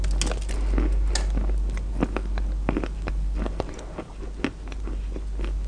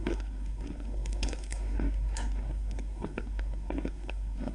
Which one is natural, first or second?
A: first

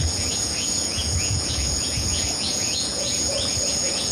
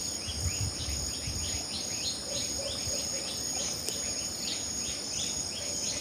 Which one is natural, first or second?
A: second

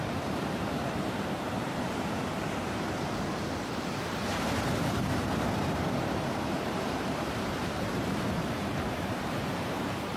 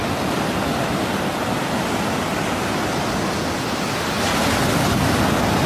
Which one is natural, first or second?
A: second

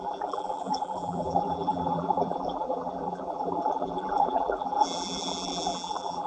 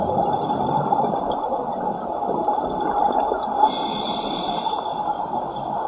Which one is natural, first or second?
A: second